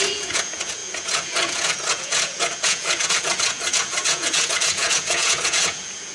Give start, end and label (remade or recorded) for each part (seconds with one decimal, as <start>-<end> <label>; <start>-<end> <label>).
0.0-6.1 remade